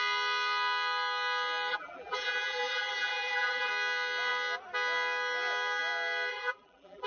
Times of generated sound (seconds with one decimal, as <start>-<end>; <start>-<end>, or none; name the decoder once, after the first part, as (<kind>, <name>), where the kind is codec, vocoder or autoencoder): 1.7-3.7 (vocoder, BigVGAN v2); 6.3-7.1